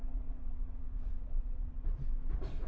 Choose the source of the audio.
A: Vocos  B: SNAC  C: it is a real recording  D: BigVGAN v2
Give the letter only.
A